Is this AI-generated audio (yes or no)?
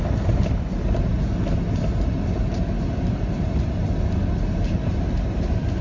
no